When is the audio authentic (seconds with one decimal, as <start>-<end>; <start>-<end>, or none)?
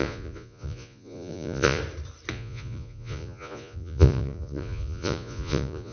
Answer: 1.8-2.3